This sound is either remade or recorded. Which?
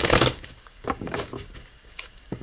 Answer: remade